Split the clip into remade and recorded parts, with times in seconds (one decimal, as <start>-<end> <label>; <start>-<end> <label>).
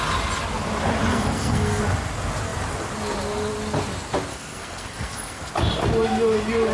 0.0-1.1 recorded; 1.1-1.8 remade; 1.8-4.3 recorded; 4.3-5.5 remade; 5.5-6.7 recorded